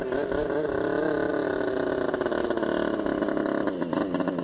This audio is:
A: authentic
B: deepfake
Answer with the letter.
A